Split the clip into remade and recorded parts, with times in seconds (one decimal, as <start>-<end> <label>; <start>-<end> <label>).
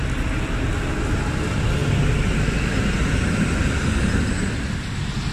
0.0-5.3 recorded